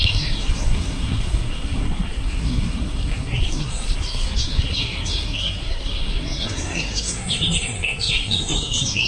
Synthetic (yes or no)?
yes